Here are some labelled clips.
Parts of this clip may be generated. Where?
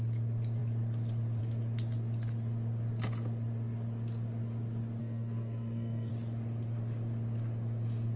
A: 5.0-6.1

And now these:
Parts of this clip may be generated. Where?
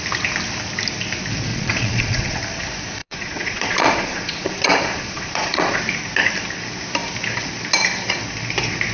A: 1.5-2.4; 3.0-5.8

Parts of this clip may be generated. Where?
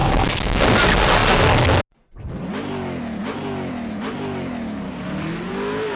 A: 0.0-0.6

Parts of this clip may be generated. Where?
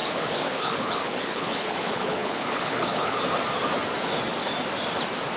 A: 0.0-3.2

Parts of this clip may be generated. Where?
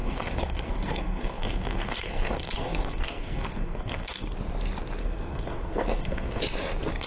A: 0.0-4.3; 5.0-6.4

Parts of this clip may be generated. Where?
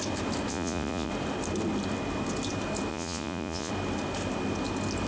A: 0.5-1.1; 2.9-3.7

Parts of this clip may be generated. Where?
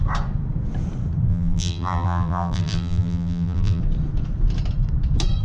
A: 1.3-3.8